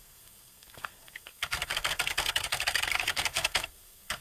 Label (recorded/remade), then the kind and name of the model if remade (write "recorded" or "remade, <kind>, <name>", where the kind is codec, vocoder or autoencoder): remade, codec, SNAC